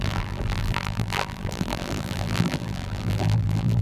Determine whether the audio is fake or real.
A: fake